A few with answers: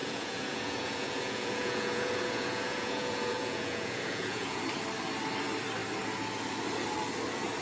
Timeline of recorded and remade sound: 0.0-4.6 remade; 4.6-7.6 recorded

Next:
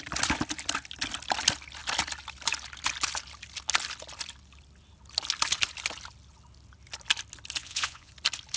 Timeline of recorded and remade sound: 0.0-7.6 recorded; 7.6-8.1 remade; 8.1-8.6 recorded

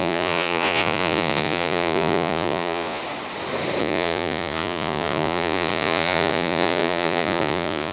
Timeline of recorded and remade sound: 0.0-3.0 remade; 3.0-3.8 recorded; 3.8-7.9 remade

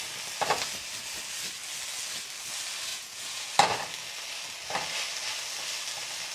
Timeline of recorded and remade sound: 0.0-2.9 recorded; 2.9-3.5 remade; 3.5-6.3 recorded

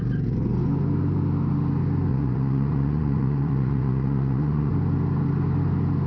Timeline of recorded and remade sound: 0.0-2.1 recorded; 2.1-4.7 remade; 4.7-6.1 recorded